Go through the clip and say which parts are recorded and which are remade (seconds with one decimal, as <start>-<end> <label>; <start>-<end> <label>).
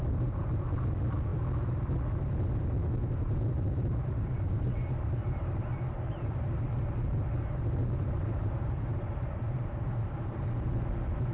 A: 0.0-3.0 recorded; 3.0-6.7 remade; 6.7-7.8 recorded; 7.8-10.7 remade; 10.7-11.3 recorded